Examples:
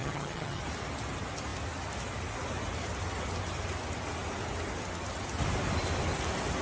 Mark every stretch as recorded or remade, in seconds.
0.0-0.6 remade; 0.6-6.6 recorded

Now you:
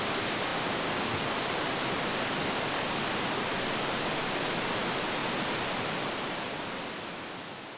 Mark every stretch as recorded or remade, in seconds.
0.0-7.8 recorded

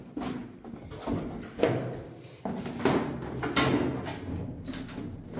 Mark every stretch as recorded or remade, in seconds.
0.0-5.4 recorded